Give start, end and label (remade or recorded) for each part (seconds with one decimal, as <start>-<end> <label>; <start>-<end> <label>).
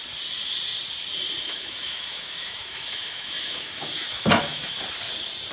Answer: 0.0-1.4 recorded; 1.4-4.7 remade; 4.7-5.5 recorded